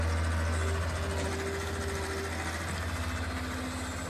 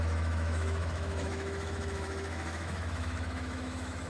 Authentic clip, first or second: first